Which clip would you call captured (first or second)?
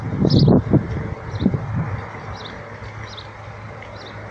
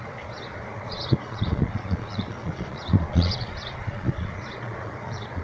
first